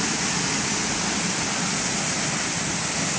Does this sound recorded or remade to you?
recorded